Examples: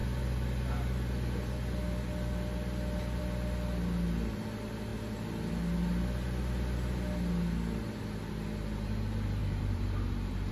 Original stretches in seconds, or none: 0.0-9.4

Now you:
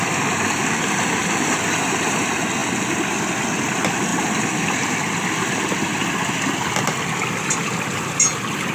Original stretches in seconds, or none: 0.0-1.2; 1.8-4.1; 5.0-8.7

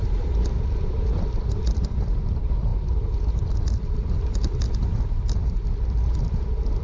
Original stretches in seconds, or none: none

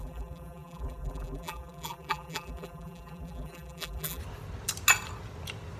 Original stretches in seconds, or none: 4.2-5.8